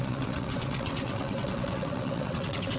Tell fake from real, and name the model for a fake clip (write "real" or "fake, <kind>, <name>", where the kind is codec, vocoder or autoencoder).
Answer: fake, vocoder, WaveNeXt